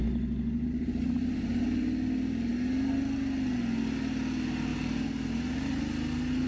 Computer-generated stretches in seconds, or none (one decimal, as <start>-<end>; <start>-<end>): 4.7-5.8